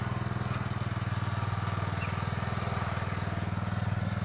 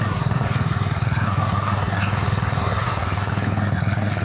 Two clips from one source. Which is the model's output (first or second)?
second